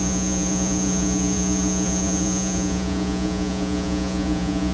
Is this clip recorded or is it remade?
remade